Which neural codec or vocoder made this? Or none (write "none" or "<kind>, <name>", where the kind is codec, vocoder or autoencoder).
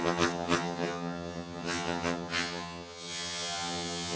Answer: vocoder, HiFi-GAN